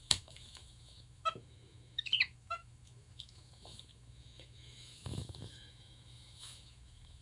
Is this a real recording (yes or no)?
no